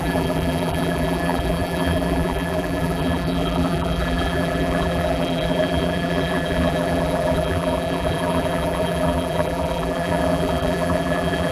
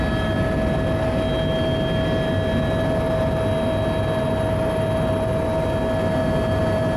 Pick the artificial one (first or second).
first